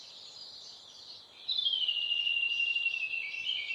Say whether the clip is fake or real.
real